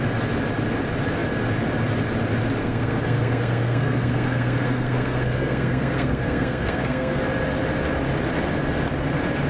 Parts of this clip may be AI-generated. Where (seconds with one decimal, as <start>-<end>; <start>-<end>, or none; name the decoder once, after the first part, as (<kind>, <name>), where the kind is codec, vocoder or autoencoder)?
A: 2.6-7.2 (codec, SNAC)